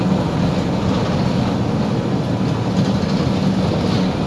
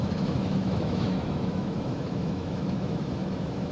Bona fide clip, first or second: first